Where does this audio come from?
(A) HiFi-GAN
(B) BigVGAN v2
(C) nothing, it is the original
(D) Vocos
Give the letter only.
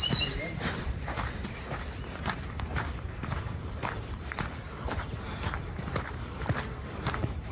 B